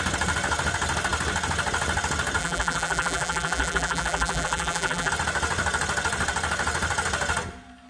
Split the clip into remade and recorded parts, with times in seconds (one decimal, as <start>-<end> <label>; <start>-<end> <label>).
0.0-2.4 recorded; 2.4-5.1 remade; 5.1-7.9 recorded